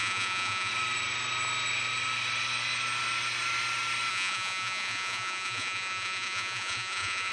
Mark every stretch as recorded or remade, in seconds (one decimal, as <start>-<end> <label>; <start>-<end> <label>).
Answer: 0.0-0.7 remade; 0.7-4.1 recorded; 4.1-7.3 remade